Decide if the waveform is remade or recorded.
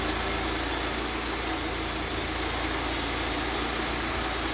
recorded